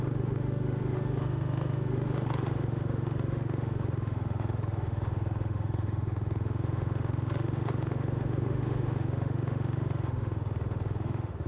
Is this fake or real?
fake